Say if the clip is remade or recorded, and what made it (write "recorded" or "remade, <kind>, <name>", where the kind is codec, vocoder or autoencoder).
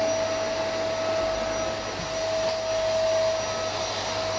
recorded